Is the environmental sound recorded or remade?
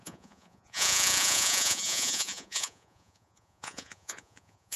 remade